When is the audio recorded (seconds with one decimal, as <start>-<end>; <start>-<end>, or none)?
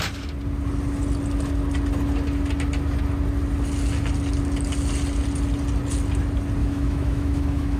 0.0-6.6